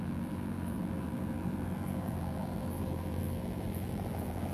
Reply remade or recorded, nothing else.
remade